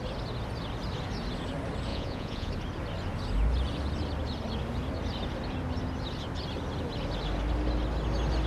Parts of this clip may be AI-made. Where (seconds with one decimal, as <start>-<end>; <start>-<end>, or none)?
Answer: 1.9-2.5